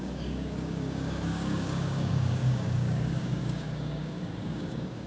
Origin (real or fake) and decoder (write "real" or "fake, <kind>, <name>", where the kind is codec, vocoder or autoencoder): fake, codec, DAC